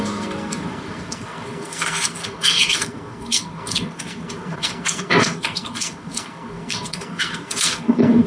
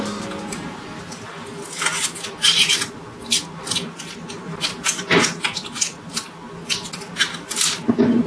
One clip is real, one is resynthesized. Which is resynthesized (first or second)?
first